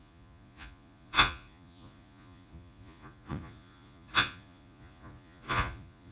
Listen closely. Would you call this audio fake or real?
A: fake